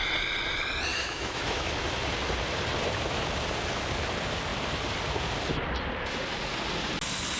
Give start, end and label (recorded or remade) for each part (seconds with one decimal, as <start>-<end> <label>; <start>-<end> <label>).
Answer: 0.0-0.9 recorded; 0.9-1.7 remade; 1.7-7.4 recorded